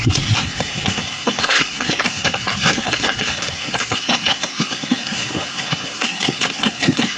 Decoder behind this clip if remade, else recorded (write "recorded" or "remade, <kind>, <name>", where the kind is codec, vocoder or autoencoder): remade, codec, SNAC